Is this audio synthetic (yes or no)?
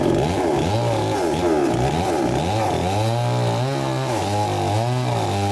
no